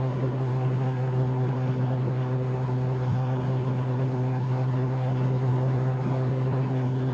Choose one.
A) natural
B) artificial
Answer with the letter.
B